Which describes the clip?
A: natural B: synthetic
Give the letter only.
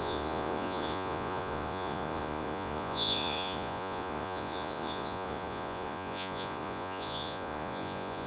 B